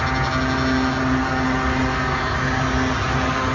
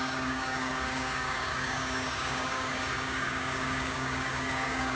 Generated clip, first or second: second